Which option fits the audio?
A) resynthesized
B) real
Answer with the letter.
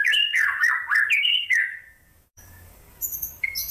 A